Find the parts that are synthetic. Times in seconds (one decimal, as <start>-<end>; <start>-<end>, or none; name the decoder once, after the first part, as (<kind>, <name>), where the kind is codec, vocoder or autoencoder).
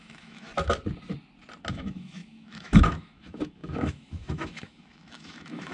0.0-0.5 (autoencoder, DAC-VAE); 1.7-5.7